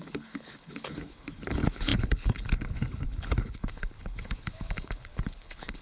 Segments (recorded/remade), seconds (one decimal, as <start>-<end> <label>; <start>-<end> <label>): 0.0-5.8 remade